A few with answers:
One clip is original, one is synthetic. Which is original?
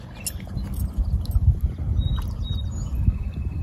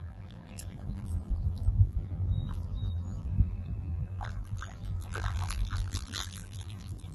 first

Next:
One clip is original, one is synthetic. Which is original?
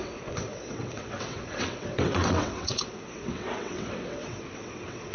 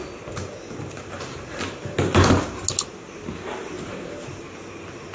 second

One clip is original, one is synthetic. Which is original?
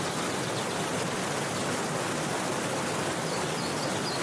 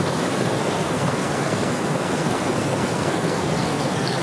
first